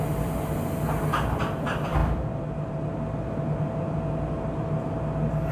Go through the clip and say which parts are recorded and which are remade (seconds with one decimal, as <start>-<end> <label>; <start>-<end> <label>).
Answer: 0.0-5.5 recorded